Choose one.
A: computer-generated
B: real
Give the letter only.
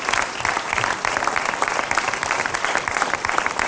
B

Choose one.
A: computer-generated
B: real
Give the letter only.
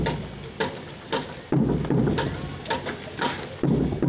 B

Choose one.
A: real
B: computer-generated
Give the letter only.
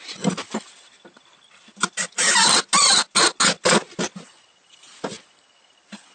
A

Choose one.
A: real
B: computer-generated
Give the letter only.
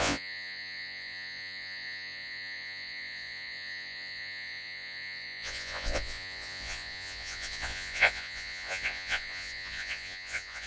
B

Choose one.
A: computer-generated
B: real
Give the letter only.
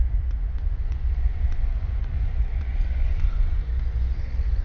A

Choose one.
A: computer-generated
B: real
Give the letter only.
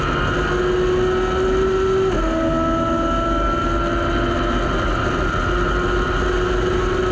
B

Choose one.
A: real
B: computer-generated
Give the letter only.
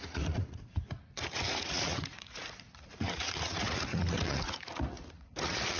B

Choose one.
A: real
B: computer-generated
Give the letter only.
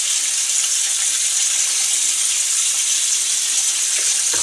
A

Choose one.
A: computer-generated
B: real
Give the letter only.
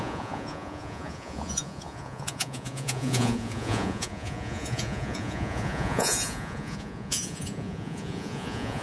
A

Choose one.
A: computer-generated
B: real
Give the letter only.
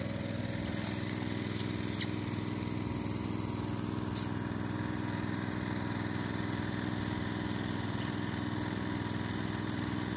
B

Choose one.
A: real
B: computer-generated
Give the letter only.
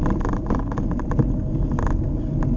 A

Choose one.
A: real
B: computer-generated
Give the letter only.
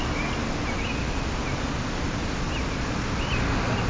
A